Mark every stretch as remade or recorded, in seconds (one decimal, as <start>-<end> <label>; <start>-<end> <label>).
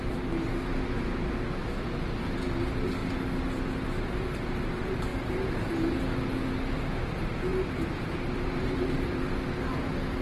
0.0-5.1 recorded; 5.1-6.0 remade; 6.0-7.5 recorded; 7.5-9.2 remade; 9.2-10.2 recorded